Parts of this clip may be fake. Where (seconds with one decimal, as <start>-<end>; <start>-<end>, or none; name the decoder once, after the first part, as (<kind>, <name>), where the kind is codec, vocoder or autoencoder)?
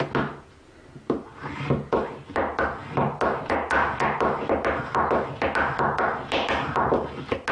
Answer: none